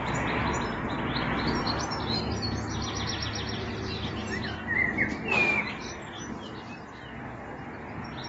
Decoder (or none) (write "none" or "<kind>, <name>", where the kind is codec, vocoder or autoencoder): none